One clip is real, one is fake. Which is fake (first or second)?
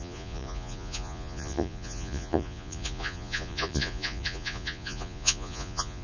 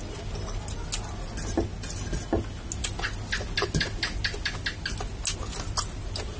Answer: first